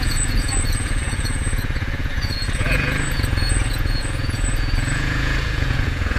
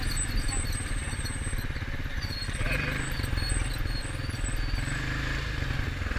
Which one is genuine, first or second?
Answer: second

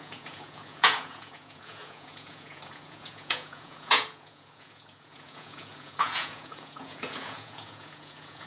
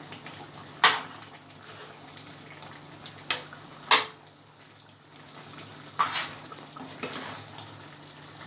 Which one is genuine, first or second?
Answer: second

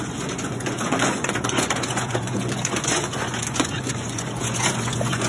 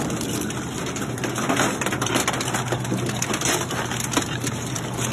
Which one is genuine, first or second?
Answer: second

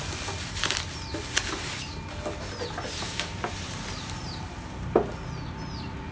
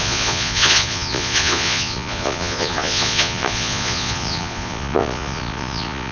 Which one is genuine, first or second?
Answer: first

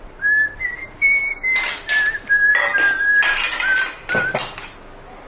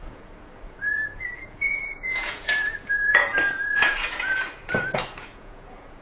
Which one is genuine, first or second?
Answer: first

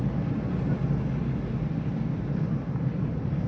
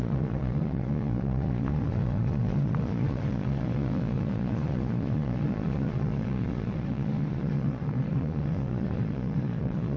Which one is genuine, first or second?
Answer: first